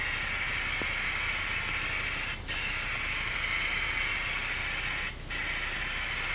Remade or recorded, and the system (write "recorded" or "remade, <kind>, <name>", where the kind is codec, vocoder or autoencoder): recorded